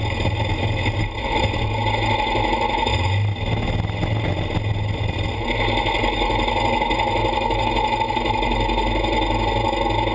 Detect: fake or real real